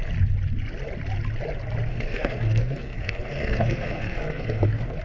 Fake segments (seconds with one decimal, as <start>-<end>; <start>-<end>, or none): 1.9-5.0

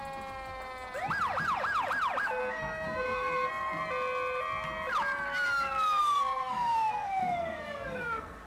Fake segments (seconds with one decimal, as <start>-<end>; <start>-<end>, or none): 2.4-3.5; 6.0-8.5